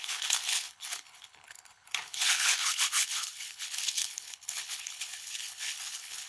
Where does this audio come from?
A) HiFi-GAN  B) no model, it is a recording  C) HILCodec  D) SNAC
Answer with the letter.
C